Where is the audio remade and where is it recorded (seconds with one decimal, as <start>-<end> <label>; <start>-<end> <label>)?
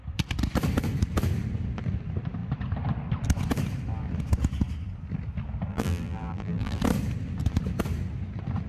0.0-5.7 recorded; 5.7-6.8 remade; 6.8-8.7 recorded